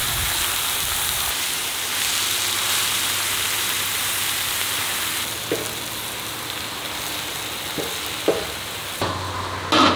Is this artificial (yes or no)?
no